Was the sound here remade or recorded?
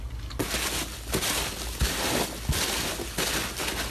recorded